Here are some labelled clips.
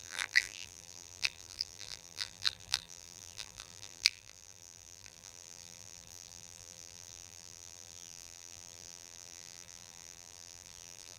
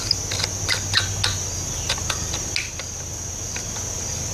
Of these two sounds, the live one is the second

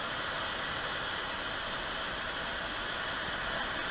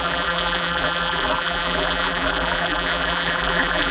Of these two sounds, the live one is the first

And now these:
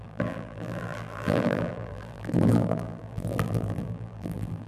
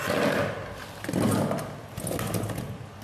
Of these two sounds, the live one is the second